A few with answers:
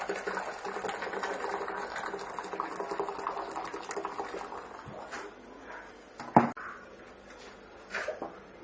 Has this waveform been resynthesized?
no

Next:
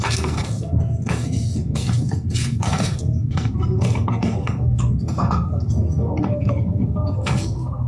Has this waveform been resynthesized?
yes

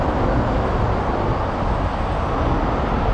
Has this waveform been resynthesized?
no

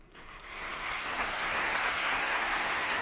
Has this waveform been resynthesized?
yes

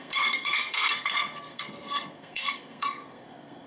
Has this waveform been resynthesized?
yes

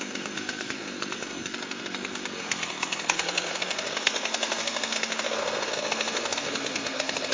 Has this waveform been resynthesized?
yes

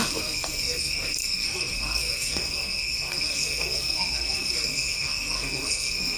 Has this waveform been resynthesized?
yes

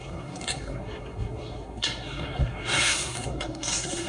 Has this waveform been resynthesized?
yes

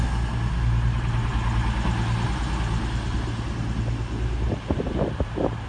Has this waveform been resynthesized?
no